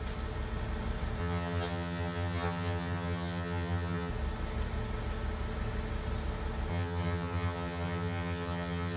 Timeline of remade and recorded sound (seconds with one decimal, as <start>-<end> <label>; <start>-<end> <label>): 0.0-1.2 recorded; 1.2-4.1 remade; 4.1-6.7 recorded; 6.7-9.0 remade